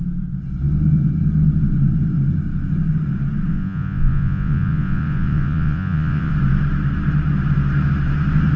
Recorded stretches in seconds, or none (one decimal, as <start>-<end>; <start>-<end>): 0.0-3.5; 6.3-8.6